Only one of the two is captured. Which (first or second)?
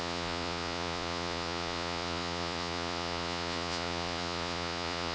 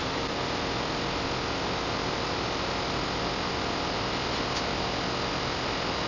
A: second